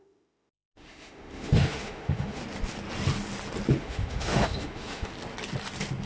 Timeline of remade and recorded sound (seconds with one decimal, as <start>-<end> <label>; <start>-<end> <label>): 0.0-2.4 remade; 2.4-3.8 recorded; 3.8-5.1 remade; 5.1-6.1 recorded